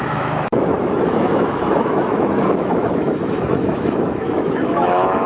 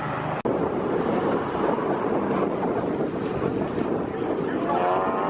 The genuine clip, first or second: second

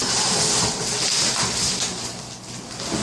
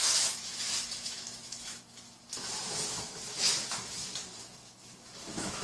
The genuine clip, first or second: first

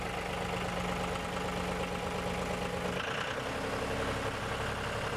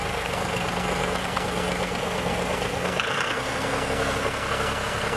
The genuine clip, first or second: first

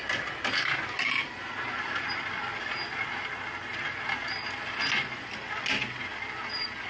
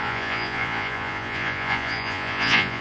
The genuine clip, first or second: first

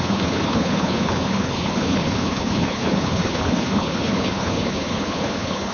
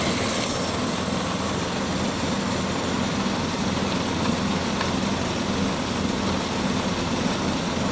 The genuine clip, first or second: second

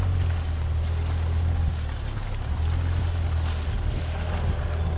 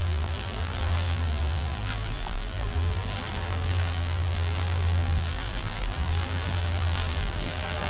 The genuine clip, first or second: first